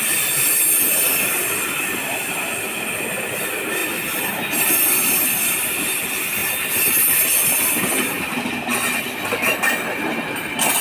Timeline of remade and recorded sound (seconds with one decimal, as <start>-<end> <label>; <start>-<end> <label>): 0.0-6.4 recorded; 6.4-7.1 remade; 7.1-10.8 recorded

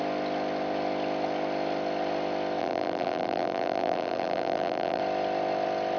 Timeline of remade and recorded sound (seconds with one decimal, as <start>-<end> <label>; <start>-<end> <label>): 0.0-2.6 recorded; 2.6-5.0 remade; 5.0-6.0 recorded

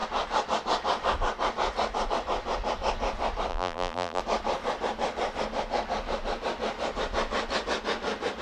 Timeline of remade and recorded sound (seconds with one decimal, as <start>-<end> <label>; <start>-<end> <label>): 0.0-3.5 recorded; 3.5-4.2 remade; 4.2-8.4 recorded

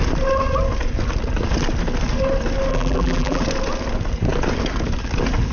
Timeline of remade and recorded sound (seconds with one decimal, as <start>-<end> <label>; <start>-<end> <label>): 0.0-2.7 recorded; 2.7-3.4 remade; 3.4-5.5 recorded

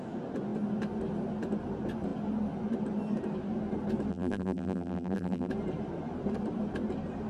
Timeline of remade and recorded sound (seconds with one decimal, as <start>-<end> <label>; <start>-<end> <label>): 0.0-4.1 recorded; 4.1-5.5 remade; 5.5-7.3 recorded